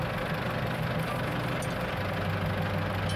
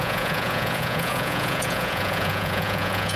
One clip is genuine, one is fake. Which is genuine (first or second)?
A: first